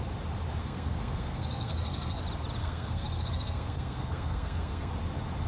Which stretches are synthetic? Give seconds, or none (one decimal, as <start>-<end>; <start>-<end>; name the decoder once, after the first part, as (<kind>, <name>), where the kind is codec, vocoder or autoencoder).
0.6-2.2 (codec, SNAC); 2.6-4.9